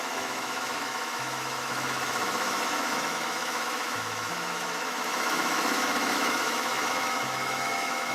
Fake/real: fake